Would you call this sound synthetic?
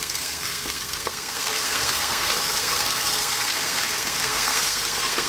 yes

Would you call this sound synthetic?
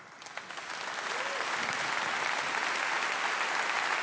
no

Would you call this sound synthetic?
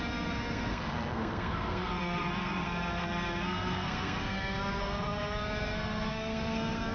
yes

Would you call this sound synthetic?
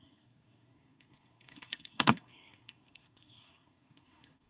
yes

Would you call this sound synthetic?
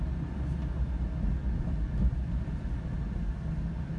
no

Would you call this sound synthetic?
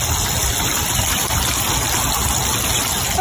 no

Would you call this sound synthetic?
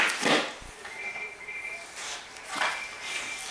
no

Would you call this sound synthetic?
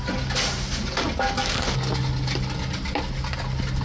no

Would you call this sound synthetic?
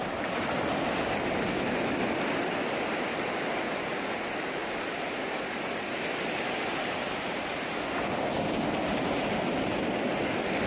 no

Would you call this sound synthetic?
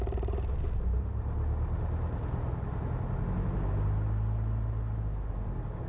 no